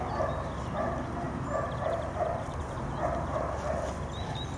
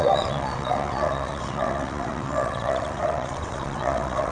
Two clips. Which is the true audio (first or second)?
first